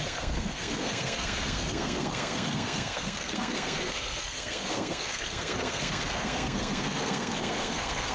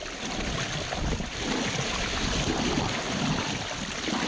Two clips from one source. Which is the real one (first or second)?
second